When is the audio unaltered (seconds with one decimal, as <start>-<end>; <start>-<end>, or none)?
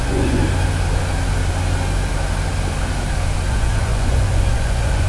0.4-3.5